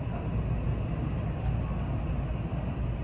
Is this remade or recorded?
recorded